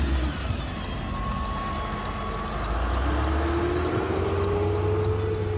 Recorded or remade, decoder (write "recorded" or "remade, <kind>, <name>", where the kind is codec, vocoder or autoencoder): recorded